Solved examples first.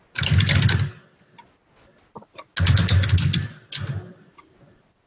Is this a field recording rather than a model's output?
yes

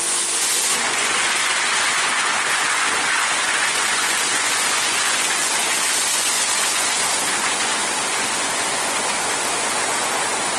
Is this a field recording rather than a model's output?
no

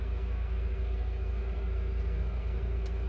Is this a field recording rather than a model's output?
no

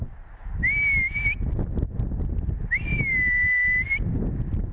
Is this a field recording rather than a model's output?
yes